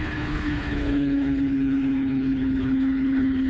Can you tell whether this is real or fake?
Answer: fake